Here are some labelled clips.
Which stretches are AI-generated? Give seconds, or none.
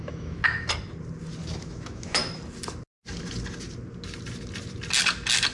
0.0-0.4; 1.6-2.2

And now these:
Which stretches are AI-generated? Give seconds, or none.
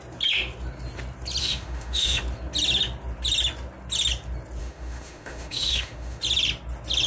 1.4-2.2; 4.6-6.2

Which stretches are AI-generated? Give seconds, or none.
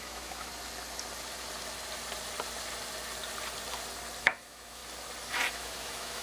0.0-0.5; 4.2-4.8; 5.5-6.2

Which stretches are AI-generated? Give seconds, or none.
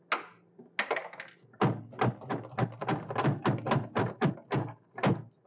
none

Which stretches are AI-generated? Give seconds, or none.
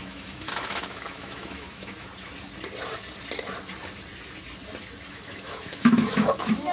0.0-2.1; 5.1-6.7